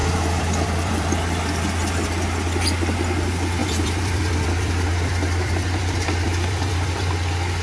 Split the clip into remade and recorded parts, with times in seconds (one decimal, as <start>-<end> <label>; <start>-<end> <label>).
0.0-1.1 remade; 1.1-3.6 recorded; 3.6-7.1 remade; 7.1-7.6 recorded